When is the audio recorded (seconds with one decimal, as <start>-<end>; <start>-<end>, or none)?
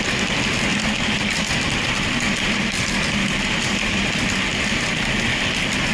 0.0-0.7; 4.1-5.9